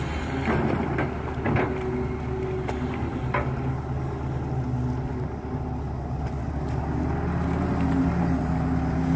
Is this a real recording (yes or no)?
yes